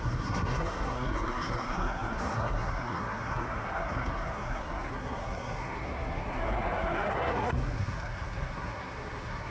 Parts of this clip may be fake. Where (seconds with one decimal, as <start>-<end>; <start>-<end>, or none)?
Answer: 0.0-9.5